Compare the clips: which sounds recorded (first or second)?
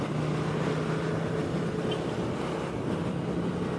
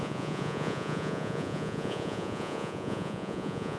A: first